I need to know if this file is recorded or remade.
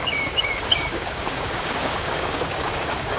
remade